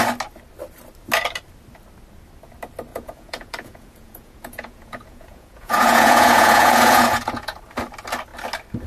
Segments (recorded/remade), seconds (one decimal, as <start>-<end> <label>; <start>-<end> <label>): 0.0-2.9 recorded; 2.9-7.6 remade; 7.6-8.9 recorded